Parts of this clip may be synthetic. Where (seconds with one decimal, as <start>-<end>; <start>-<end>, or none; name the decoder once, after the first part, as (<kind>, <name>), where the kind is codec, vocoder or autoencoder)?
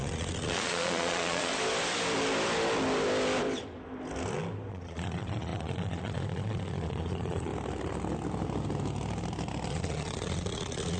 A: 0.0-1.5 (vocoder, Vocos); 4.7-7.5; 9.7-11.0